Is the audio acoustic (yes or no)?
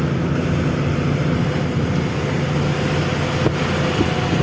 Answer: yes